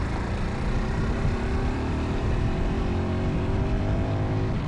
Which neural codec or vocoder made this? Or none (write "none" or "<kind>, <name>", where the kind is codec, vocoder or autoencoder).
vocoder, BigVGAN v2